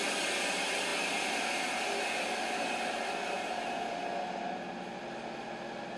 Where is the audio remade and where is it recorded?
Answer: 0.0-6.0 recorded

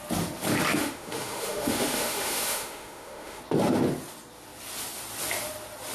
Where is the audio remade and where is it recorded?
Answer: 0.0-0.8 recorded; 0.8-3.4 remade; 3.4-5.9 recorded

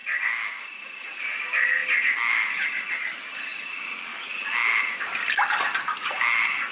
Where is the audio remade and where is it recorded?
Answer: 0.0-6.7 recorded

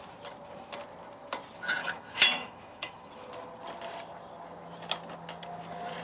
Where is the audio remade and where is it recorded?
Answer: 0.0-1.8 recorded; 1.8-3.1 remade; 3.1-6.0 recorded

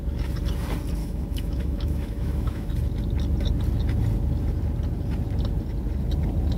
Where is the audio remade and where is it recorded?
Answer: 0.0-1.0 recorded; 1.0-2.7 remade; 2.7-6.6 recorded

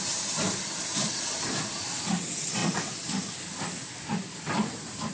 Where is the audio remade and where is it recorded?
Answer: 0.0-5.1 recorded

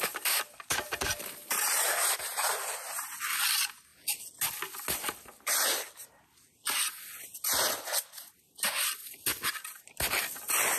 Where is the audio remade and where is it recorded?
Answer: 0.0-10.8 recorded

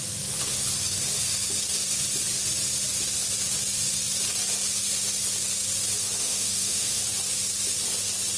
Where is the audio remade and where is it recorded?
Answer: 0.0-6.2 recorded; 6.2-7.0 remade; 7.0-8.4 recorded